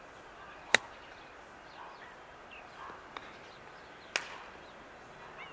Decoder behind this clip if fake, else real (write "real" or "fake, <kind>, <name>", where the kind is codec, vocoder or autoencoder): real